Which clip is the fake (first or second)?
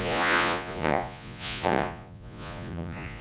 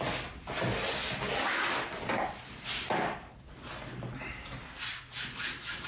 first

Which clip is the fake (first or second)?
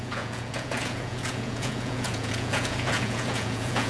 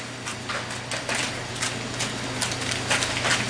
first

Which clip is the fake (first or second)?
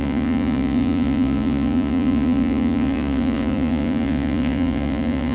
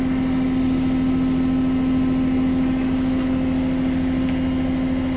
first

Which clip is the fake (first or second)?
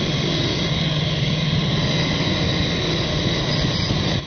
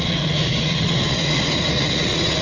second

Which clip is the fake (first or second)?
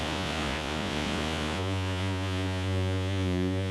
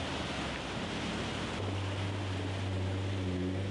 first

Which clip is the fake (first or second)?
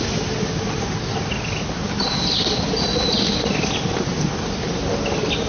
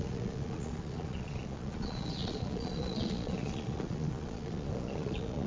second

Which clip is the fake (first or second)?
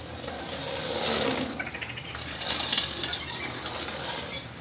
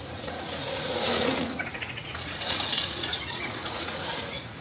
second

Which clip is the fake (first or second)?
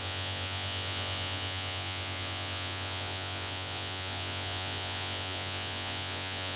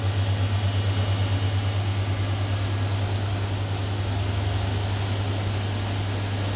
first